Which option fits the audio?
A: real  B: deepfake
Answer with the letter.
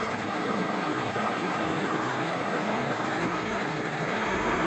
B